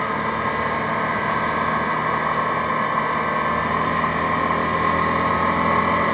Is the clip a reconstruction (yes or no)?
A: no